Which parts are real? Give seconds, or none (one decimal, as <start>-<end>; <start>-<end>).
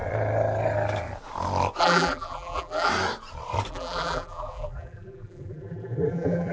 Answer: 0.0-1.8; 2.9-3.7